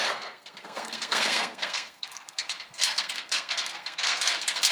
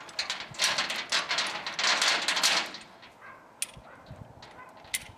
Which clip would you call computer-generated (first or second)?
first